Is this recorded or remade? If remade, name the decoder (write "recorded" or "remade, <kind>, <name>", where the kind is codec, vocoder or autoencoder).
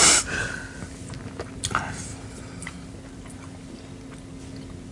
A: recorded